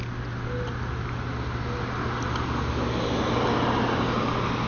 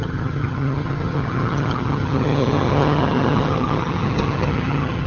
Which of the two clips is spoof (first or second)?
second